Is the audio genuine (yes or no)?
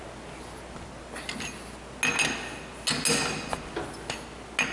yes